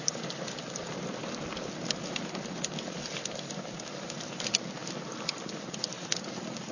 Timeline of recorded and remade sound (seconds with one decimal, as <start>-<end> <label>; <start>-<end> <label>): 0.0-6.7 recorded